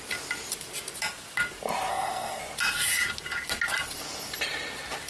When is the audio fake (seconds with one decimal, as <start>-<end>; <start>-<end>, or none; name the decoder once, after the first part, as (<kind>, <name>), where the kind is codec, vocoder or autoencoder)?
1.9-2.4 (codec, SNAC)